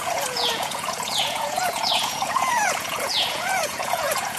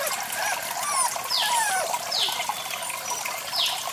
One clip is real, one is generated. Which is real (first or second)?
second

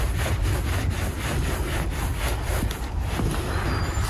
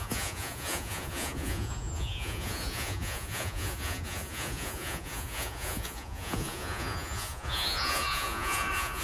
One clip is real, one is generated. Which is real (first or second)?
first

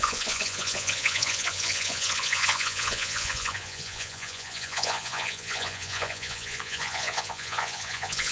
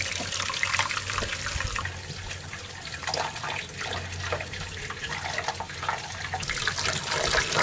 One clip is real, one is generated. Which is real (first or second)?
second